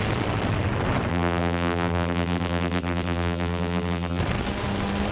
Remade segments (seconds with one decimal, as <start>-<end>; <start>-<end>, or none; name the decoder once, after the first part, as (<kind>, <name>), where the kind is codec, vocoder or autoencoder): 1.1-4.2 (vocoder, BigVGAN v2)